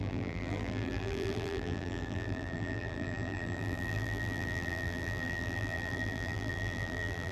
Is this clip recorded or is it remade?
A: remade